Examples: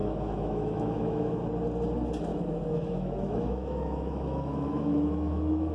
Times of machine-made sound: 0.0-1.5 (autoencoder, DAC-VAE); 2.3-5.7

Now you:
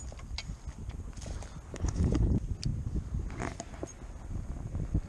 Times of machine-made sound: 1.7-2.3 (codec, HILCodec)

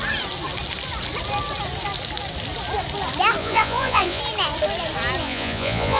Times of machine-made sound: 3.4-4.2 (vocoder, Vocos); 5.2-6.0